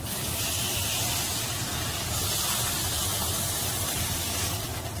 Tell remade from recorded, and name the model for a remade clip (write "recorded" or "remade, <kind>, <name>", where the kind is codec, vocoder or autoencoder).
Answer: recorded